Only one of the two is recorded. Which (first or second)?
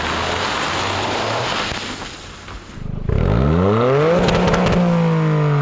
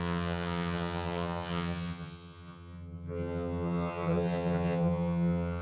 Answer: first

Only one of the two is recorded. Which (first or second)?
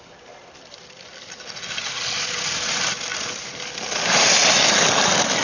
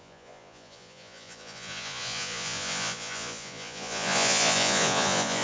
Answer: first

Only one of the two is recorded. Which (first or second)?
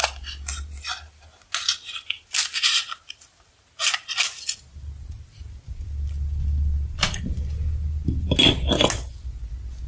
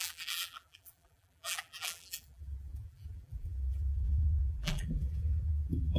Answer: first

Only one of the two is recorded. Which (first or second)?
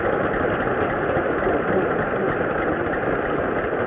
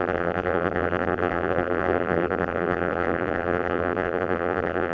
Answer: first